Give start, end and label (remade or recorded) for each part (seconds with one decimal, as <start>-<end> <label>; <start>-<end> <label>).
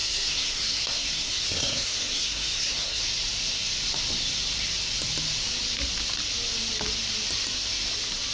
0.0-3.0 remade; 3.0-8.3 recorded